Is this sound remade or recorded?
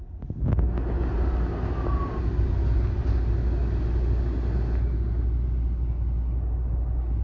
recorded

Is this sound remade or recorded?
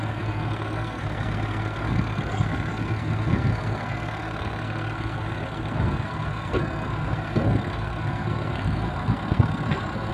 remade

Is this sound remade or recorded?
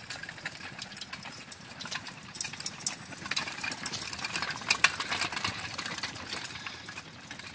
recorded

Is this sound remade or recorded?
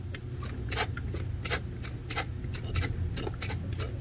recorded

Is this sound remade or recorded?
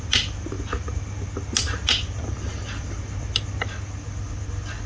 recorded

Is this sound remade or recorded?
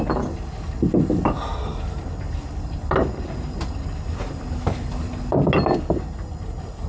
recorded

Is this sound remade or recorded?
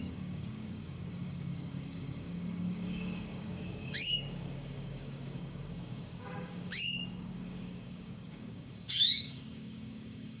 remade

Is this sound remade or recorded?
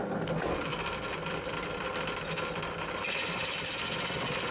remade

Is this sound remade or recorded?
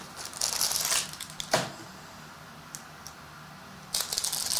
recorded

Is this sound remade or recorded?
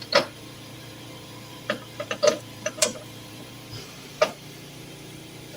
remade